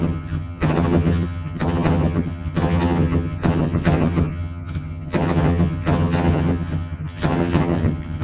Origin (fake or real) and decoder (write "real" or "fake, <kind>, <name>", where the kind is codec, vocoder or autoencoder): fake, vocoder, HiFi-GAN